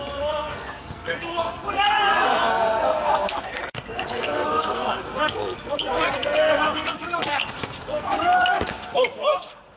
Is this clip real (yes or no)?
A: no